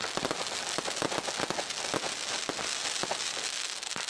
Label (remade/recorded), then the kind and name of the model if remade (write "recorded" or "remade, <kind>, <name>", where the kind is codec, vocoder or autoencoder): recorded